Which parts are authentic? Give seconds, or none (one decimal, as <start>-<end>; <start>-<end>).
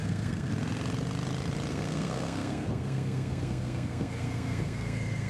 0.5-1.7